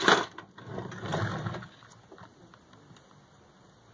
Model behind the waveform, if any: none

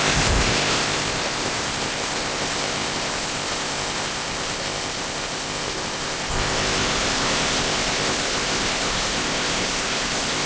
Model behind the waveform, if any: codec, ZipCodec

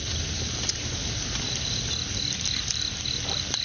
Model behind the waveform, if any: none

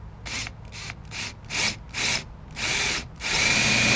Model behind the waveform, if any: none